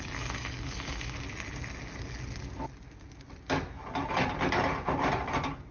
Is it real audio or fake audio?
real